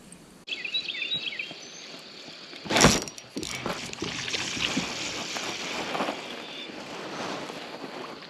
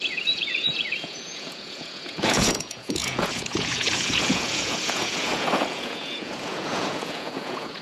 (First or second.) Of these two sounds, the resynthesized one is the second